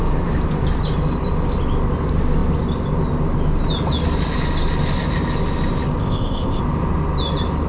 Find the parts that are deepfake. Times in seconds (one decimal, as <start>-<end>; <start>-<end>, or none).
6.0-6.6